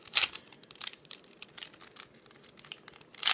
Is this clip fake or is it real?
real